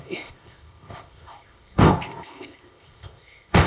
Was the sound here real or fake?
fake